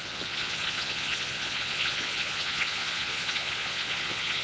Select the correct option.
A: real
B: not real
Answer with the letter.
B